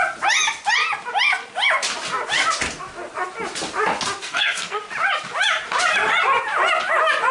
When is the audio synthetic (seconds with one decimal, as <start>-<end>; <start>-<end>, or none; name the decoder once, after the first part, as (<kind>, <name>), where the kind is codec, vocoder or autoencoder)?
4.2-4.8 (codec, SNAC)